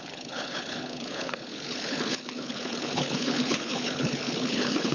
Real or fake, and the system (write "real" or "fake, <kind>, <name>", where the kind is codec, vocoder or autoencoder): fake, codec, HILCodec